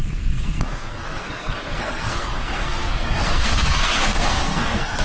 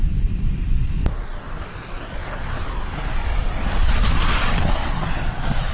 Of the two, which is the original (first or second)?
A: second